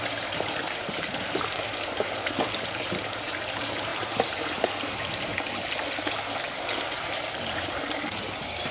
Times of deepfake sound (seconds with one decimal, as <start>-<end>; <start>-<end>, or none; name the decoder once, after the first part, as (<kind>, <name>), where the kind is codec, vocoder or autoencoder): 0.0-8.7 (vocoder, BigVGAN v2)